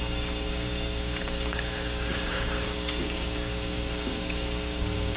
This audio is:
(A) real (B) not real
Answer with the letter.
B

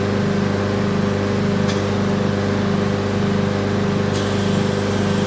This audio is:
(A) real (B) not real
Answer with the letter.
A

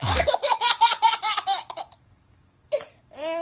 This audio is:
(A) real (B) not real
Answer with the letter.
B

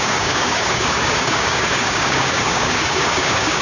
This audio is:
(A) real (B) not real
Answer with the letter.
B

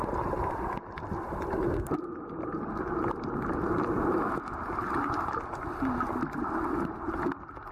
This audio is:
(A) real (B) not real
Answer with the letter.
A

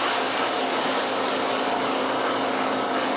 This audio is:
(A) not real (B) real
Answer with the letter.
A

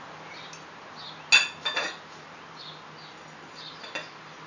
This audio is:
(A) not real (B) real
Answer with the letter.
B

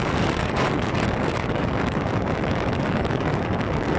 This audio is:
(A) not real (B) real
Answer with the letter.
A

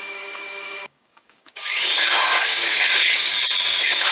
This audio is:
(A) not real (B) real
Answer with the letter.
A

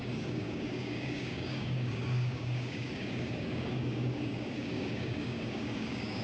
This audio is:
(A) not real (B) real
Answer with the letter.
A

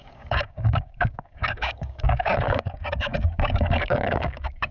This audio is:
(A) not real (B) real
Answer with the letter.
A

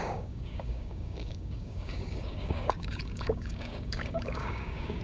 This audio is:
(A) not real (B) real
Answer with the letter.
A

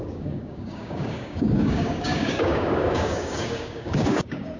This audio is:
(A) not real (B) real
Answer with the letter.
A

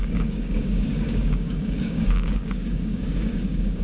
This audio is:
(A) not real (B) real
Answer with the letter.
A